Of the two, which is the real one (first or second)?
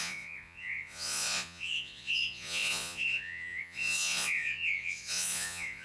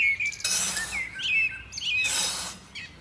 second